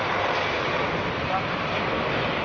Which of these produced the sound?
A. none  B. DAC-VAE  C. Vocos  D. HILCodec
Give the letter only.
A